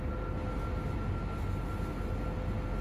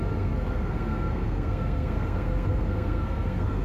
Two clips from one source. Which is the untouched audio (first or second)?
first